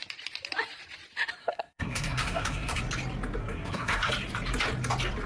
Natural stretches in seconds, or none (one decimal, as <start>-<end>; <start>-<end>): 0.0-1.4; 2.8-3.4; 4.1-5.3